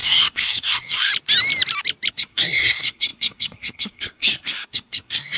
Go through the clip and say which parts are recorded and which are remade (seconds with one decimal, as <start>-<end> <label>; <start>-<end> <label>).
0.0-1.1 remade; 1.1-2.1 recorded; 2.1-5.4 remade